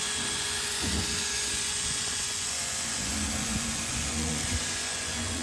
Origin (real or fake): fake